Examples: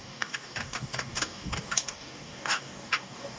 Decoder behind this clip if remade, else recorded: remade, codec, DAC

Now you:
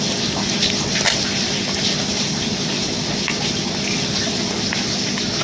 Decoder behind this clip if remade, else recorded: recorded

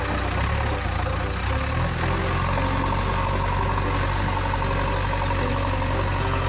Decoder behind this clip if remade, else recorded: recorded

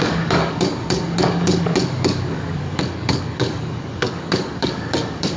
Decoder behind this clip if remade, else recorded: remade, codec, DAC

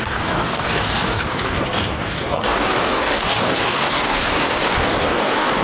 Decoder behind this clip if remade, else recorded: remade, codec, DAC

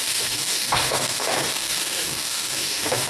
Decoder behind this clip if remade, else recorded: remade, codec, DAC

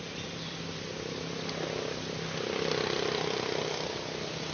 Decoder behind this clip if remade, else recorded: recorded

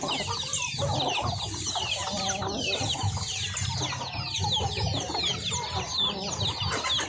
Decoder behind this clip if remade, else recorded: recorded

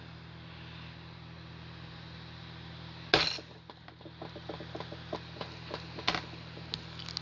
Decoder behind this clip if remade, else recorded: recorded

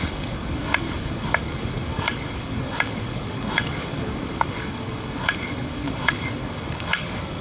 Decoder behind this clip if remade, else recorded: remade, codec, DAC